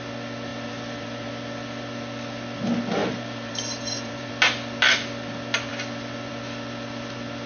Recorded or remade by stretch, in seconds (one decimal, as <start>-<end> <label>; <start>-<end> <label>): 0.0-0.5 recorded; 0.5-1.3 remade; 1.3-3.0 recorded; 3.0-4.3 remade; 4.3-7.5 recorded